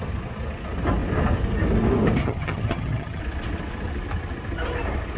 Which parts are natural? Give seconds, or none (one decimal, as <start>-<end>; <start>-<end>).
0.0-2.2; 3.2-5.2